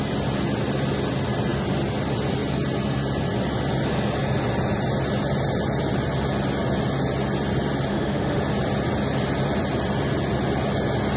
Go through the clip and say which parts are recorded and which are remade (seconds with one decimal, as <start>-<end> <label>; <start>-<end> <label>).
0.0-7.9 recorded; 7.9-8.4 remade; 8.4-11.2 recorded

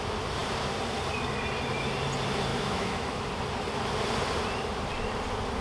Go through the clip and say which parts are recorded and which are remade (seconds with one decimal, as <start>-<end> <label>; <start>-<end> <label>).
0.0-2.5 recorded; 2.5-3.3 remade; 3.3-5.6 recorded

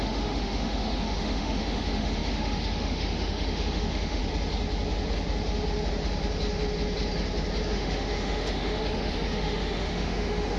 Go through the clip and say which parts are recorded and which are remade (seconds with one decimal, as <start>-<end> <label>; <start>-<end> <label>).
0.0-4.2 remade; 4.2-7.7 recorded; 7.7-10.6 remade

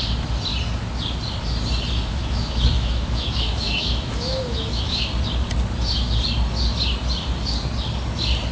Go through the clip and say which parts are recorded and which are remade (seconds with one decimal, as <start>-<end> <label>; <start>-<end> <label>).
0.0-2.1 recorded; 2.1-5.1 remade; 5.1-8.5 recorded

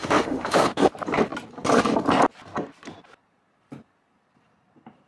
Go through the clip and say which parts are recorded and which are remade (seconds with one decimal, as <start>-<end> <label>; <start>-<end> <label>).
0.0-0.9 remade; 0.9-5.1 recorded

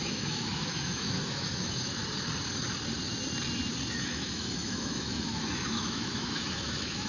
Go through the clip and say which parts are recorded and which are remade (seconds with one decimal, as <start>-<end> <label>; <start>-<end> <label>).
0.0-2.0 remade; 2.0-3.9 recorded; 3.9-7.1 remade

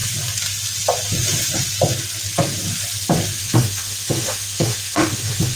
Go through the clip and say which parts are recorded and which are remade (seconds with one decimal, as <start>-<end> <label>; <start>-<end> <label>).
0.0-3.4 recorded; 3.4-5.6 remade

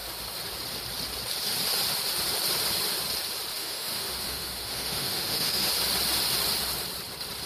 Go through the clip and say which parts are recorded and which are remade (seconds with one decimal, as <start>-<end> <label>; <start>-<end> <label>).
0.0-3.5 recorded; 3.5-5.7 remade; 5.7-7.5 recorded